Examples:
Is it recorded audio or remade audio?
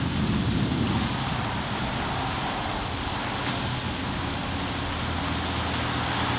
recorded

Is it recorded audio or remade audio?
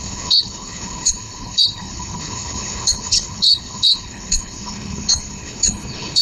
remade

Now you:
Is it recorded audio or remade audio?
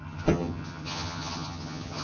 remade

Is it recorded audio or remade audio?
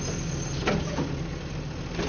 recorded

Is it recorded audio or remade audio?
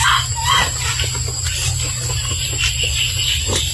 recorded